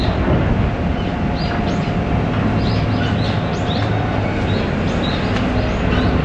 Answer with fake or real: real